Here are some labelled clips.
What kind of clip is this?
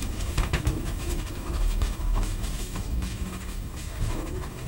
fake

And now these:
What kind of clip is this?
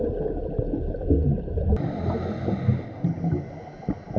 real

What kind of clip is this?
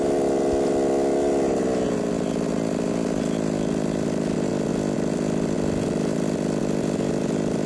real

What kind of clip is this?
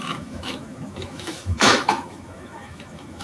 fake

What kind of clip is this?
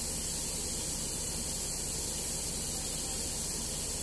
real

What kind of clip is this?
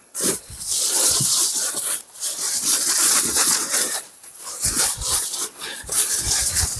fake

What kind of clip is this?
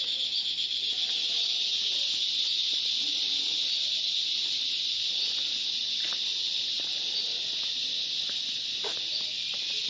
real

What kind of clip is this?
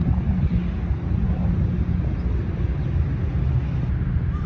real